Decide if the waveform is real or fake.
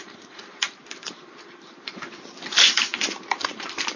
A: fake